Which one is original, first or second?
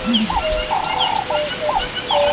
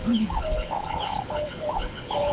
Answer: first